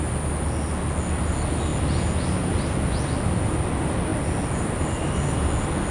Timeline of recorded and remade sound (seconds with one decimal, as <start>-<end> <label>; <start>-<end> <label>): 0.0-5.9 recorded